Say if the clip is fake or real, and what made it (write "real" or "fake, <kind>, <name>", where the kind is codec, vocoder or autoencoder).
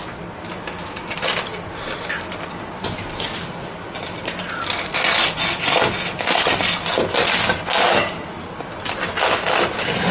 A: real